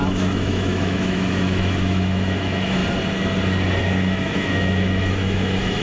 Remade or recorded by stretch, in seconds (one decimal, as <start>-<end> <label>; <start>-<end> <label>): 0.0-2.8 remade; 2.8-3.8 recorded; 3.8-5.8 remade